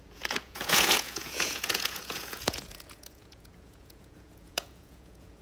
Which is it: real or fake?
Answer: fake